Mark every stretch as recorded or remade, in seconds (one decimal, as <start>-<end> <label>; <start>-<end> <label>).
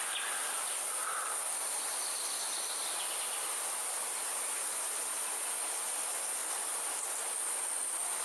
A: 0.0-8.2 recorded